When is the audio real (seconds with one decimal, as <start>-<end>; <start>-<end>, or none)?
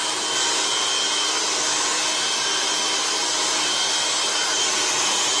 0.0-5.4